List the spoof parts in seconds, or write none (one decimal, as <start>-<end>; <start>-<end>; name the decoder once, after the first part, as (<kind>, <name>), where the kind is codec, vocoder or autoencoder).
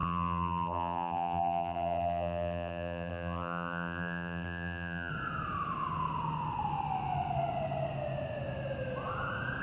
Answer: 0.0-5.1 (vocoder, BigVGAN v2)